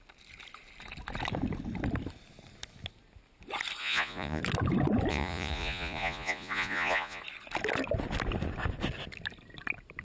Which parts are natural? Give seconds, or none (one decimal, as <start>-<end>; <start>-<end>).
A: 0.0-3.8; 4.4-5.1; 7.2-10.0